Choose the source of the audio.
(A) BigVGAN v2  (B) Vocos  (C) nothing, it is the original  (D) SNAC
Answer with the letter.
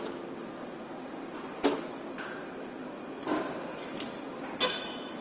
C